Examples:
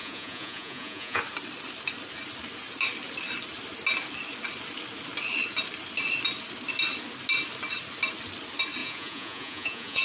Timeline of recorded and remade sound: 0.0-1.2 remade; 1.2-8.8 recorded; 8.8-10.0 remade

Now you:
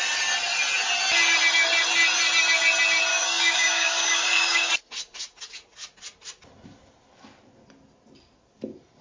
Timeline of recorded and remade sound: 0.0-3.1 recorded; 3.1-4.7 remade; 4.7-9.0 recorded

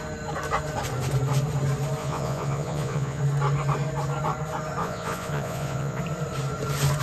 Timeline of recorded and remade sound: 0.0-2.0 recorded; 2.0-3.2 remade; 3.2-4.8 recorded; 4.8-6.0 remade; 6.0-7.0 recorded

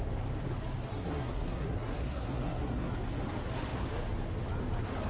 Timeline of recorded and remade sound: 0.0-0.9 recorded; 0.9-2.9 remade; 2.9-5.1 recorded